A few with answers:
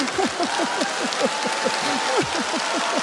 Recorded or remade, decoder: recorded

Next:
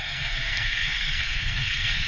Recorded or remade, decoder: remade, codec, SNAC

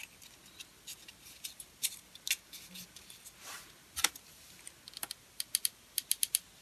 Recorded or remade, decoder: recorded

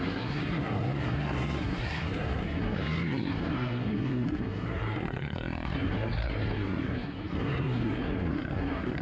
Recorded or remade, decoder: remade, codec, SNAC